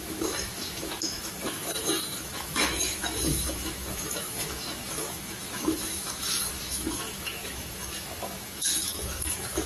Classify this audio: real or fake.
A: fake